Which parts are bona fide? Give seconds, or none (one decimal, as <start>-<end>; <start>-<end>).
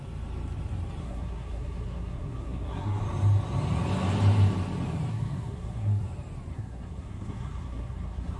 0.0-1.0; 3.0-5.1; 6.0-6.5